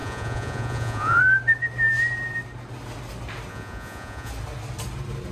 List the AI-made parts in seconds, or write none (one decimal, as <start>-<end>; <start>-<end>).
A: 0.0-1.2; 3.5-4.3